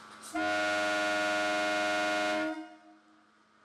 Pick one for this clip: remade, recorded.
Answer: recorded